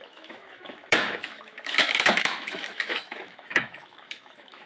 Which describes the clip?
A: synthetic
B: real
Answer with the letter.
A